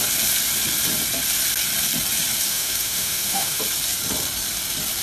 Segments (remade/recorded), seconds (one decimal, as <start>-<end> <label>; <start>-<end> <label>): 0.0-2.5 recorded; 2.5-3.6 remade; 3.6-5.0 recorded